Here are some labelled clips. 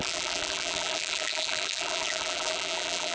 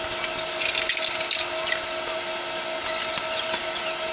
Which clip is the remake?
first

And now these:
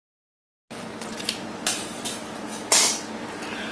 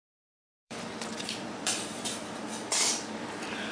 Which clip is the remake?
second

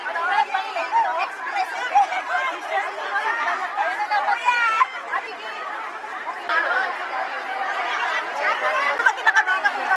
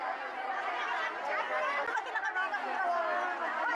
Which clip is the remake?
first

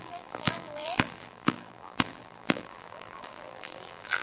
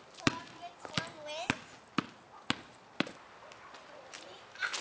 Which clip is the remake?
first